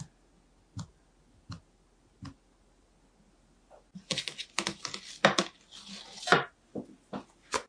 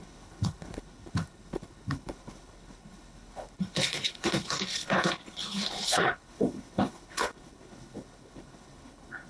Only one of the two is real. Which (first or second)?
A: first